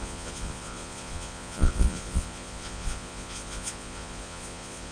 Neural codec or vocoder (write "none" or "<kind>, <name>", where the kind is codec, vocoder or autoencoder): vocoder, Vocos